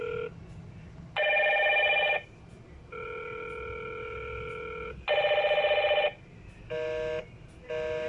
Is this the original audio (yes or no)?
yes